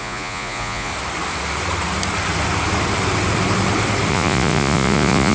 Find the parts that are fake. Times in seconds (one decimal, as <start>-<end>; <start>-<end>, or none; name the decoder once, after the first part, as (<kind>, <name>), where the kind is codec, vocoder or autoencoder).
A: 0.0-0.9 (vocoder, Vocos); 4.1-5.3